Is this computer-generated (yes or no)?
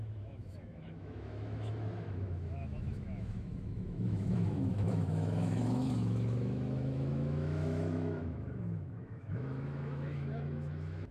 yes